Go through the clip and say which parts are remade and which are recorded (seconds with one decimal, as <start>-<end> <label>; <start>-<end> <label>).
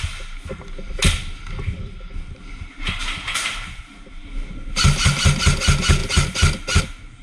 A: 0.0-3.0 recorded; 3.0-3.8 remade; 3.8-7.2 recorded